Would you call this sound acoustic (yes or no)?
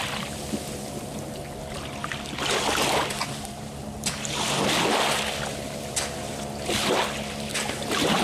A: yes